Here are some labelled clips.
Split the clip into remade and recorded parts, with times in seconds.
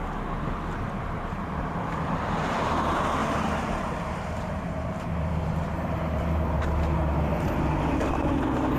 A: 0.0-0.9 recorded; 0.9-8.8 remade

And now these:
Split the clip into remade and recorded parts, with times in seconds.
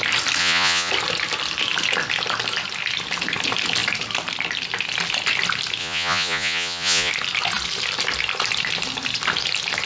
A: 0.0-0.4 recorded; 0.4-0.9 remade; 0.9-5.8 recorded; 5.8-7.1 remade; 7.1-9.9 recorded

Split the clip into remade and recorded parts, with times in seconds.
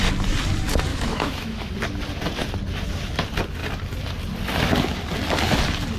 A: 0.0-0.9 recorded; 0.9-1.7 remade; 1.7-6.0 recorded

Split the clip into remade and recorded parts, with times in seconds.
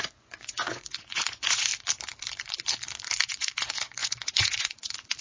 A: 0.0-1.7 remade; 1.7-3.3 recorded; 3.3-5.2 remade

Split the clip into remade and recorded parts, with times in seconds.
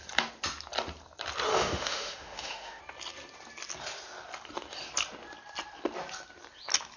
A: 0.0-1.5 recorded; 1.5-2.8 remade; 2.8-7.0 recorded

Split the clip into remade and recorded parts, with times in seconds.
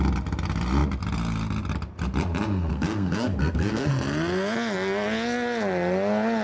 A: 0.0-2.7 recorded; 2.7-3.9 remade; 3.9-6.4 recorded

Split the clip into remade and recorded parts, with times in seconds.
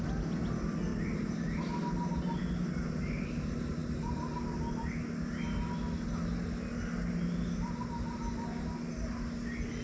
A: 0.0-9.8 recorded